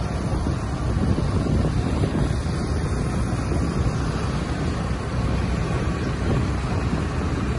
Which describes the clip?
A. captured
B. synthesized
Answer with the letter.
A